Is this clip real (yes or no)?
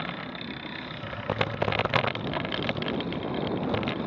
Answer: yes